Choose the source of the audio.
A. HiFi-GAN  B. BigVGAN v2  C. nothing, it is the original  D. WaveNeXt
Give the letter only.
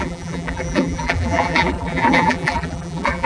B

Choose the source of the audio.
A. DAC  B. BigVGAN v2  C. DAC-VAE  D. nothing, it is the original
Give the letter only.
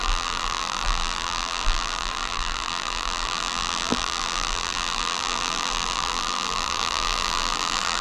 B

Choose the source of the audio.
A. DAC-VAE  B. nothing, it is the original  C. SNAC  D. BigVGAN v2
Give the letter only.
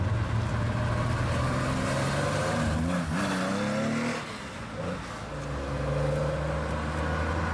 B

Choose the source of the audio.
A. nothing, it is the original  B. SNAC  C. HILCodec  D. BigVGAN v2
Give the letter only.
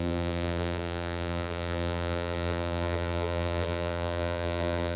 D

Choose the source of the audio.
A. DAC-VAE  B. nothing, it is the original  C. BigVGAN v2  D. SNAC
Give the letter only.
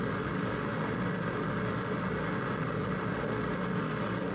B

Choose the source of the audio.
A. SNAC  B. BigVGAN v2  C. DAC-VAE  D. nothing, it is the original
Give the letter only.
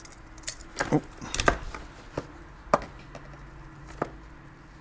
D